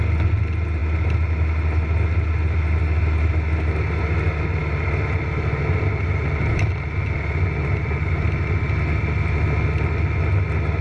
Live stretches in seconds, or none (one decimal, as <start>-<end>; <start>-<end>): 0.0-10.8